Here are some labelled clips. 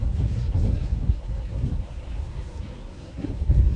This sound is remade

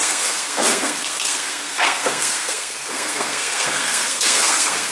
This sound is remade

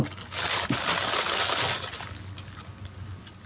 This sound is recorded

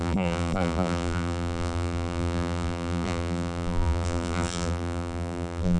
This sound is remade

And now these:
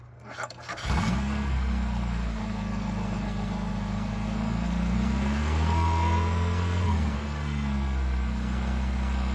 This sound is remade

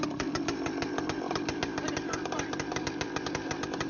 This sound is remade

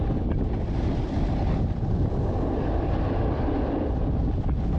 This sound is recorded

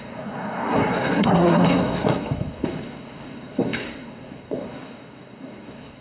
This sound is remade